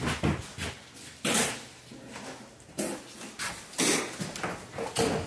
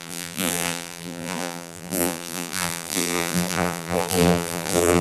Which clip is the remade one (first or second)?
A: second